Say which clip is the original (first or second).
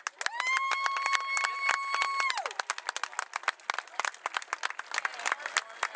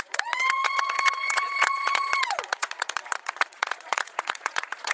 first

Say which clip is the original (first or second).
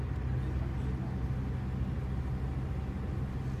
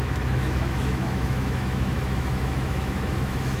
first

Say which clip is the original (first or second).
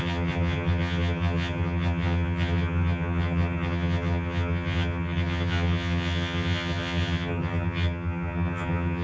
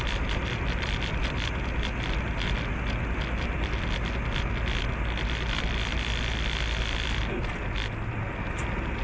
second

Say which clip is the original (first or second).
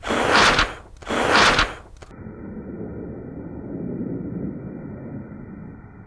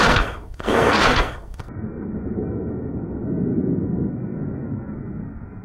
first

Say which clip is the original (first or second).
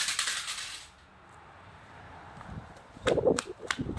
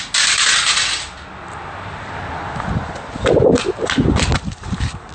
second